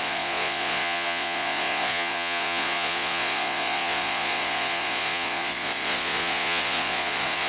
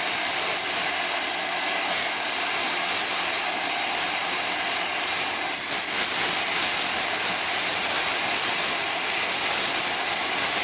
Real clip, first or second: second